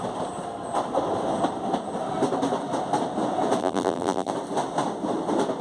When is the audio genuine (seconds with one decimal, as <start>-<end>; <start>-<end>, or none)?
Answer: 0.0-3.6; 4.3-5.6